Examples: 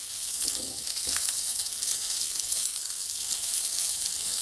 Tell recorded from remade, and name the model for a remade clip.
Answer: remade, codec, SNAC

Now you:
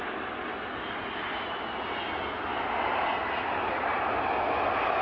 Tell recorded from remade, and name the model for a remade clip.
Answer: recorded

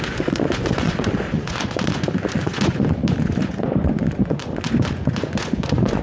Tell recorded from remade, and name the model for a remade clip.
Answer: remade, vocoder, Vocos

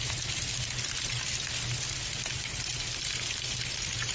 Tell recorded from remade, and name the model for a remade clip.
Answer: recorded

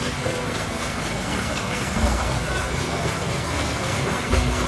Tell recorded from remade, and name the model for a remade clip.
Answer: remade, codec, SNAC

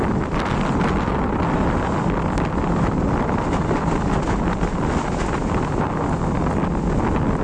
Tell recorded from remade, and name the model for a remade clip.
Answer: recorded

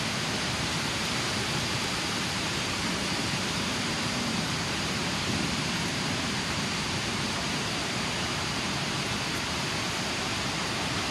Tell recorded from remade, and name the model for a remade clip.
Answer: remade, vocoder, BigVGAN v2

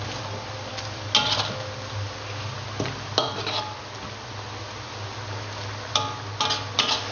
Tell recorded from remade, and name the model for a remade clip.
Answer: recorded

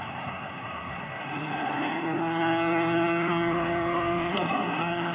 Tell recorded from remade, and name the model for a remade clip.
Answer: remade, codec, SNAC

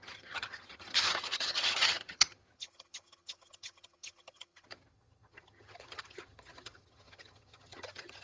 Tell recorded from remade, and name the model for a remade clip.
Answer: remade, vocoder, HiFi-GAN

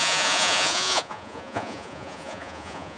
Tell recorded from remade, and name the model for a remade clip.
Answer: remade, vocoder, Vocos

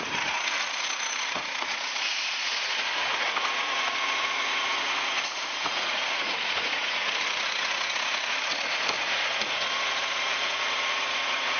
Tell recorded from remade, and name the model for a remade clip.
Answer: remade, vocoder, Vocos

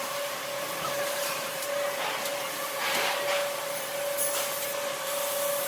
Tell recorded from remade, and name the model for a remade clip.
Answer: recorded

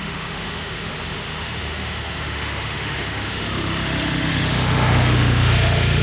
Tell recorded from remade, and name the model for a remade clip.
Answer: remade, autoencoder, DAC-VAE